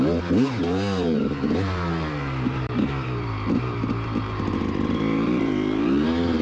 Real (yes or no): no